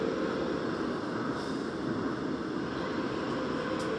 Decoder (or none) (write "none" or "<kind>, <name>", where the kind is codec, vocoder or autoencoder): none